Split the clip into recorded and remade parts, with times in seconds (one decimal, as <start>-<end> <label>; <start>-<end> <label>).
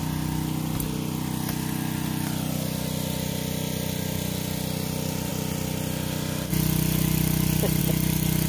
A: 0.0-8.5 recorded